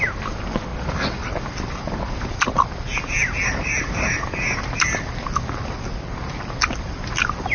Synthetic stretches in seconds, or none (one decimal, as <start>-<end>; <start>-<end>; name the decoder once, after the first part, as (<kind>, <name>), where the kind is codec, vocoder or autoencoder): none